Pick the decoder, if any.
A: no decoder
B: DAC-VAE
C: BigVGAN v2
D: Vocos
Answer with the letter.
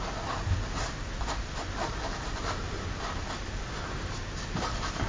A